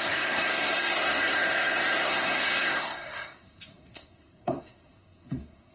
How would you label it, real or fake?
fake